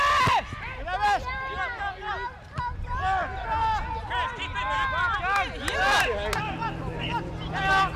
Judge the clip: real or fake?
real